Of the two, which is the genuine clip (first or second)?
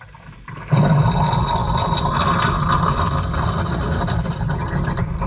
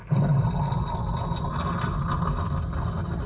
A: second